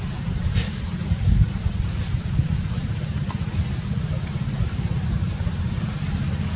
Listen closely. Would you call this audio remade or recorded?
remade